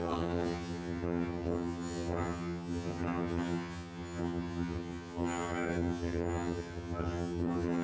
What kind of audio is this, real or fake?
fake